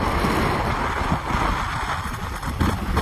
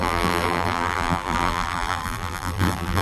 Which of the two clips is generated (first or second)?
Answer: second